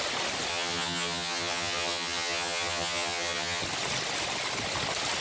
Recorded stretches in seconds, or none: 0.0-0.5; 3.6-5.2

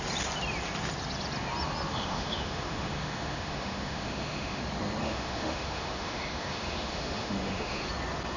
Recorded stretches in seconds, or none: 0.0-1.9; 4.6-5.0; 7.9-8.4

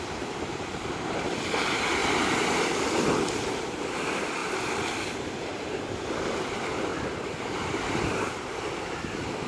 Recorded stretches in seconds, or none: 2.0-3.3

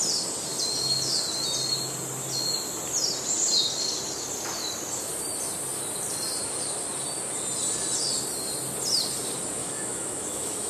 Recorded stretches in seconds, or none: 0.0-9.6

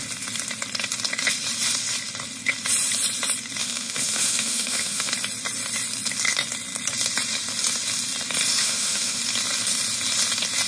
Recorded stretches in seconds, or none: 0.0-3.6; 5.1-8.6; 9.2-10.7